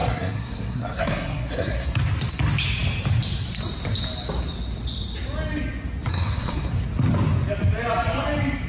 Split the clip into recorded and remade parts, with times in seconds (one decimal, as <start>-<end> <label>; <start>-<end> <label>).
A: 0.0-2.0 remade; 2.0-6.1 recorded; 6.1-6.7 remade; 6.7-8.7 recorded